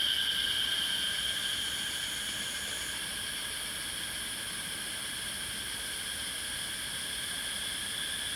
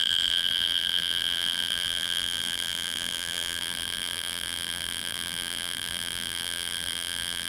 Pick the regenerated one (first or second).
second